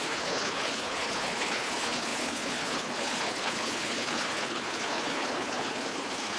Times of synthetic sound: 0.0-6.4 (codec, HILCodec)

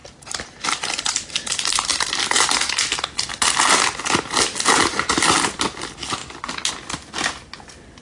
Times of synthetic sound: 0.0-1.5 (vocoder, BigVGAN v2); 1.9-3.3